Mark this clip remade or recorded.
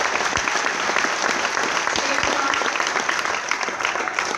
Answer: recorded